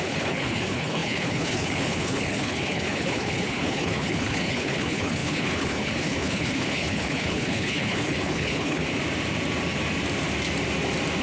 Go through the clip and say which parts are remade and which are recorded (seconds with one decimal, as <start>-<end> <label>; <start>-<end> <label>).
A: 0.0-8.8 remade; 8.8-11.2 recorded